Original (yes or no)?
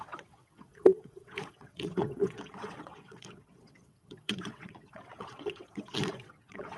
no